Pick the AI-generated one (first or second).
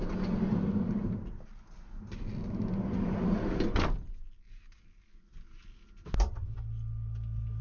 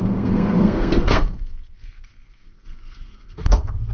second